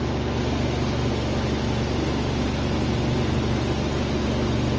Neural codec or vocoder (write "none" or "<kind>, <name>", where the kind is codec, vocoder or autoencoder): none